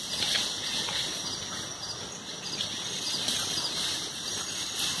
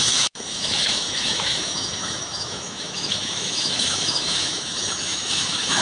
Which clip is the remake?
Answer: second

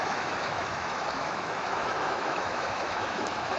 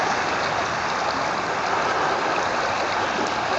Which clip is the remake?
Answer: first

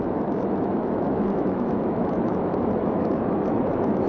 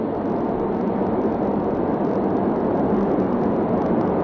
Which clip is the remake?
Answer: first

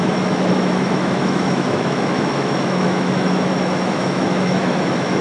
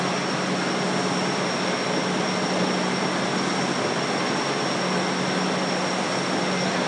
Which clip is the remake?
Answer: first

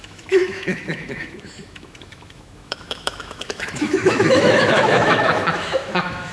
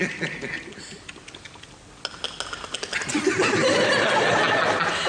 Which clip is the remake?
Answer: first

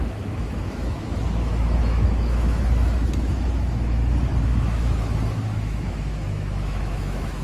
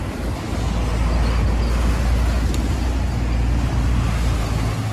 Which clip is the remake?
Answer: first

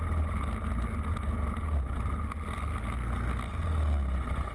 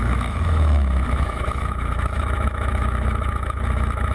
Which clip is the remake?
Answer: second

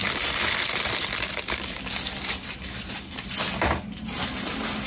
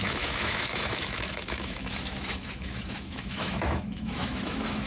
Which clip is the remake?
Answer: second